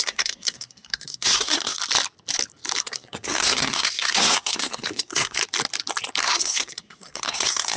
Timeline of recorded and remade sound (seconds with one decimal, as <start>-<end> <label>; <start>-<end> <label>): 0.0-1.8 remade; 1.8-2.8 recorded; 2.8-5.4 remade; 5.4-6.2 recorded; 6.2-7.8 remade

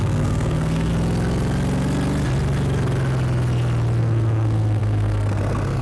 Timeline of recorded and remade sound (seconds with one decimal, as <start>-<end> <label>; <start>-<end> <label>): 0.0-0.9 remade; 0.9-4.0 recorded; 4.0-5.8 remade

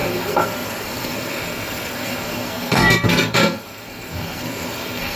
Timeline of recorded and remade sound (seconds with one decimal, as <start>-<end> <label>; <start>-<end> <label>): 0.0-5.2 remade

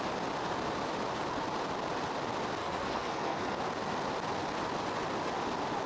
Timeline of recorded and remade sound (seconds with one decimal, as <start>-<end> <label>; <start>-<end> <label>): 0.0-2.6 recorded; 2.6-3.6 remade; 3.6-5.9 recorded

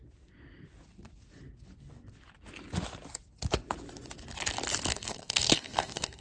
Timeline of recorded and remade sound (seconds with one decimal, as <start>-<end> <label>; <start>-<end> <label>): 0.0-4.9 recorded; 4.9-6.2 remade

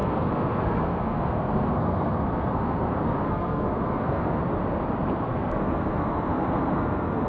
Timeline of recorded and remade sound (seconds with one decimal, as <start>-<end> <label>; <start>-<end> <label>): 0.0-4.4 remade; 4.4-5.3 recorded; 5.3-7.3 remade

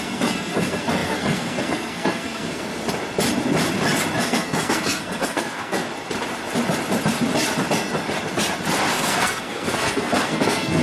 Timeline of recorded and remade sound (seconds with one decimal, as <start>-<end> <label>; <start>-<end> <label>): 0.0-2.7 remade; 2.7-4.2 recorded; 4.2-5.9 remade; 5.9-8.9 recorded; 8.9-10.8 remade